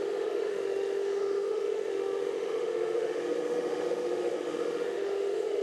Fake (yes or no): yes